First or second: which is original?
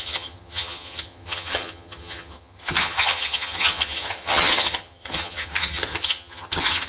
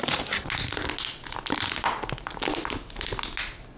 second